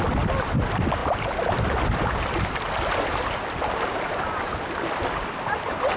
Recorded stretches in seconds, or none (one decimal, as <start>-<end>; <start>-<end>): 0.0-6.0